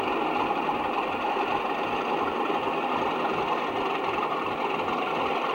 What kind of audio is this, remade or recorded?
recorded